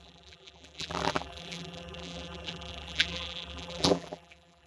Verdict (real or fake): fake